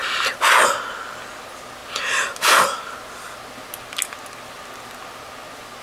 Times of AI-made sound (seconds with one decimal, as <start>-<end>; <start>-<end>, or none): none